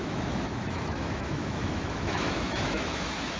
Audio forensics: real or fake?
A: fake